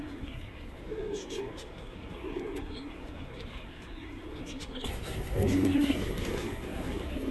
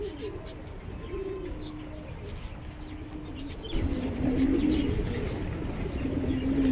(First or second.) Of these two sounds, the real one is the second